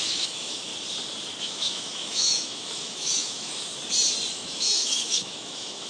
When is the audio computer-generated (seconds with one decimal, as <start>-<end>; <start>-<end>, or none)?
0.0-0.7; 1.4-3.7; 4.3-5.9